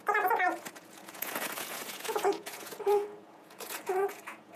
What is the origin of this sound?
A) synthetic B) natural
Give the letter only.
A